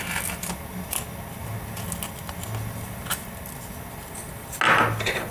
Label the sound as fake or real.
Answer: real